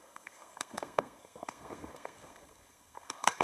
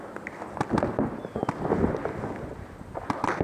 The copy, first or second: first